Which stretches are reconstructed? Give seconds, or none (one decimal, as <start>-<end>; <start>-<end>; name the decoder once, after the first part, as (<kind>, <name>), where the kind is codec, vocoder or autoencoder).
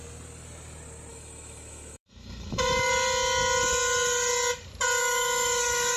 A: 1.1-2.9 (autoencoder, DAC-VAE); 5.0-6.0